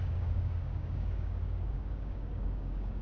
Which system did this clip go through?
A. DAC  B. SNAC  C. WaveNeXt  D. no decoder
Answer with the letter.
A